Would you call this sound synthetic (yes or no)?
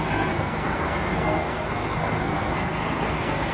yes